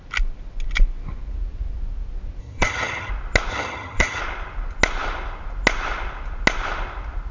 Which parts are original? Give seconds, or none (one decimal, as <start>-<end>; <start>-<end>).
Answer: 0.0-2.4; 3.1-3.5; 4.2-7.3